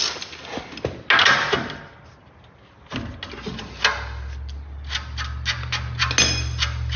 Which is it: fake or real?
real